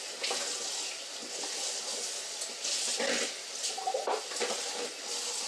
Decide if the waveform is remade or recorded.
recorded